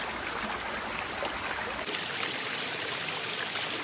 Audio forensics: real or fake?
real